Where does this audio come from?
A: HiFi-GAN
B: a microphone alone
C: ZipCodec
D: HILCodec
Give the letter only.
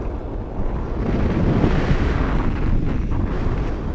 B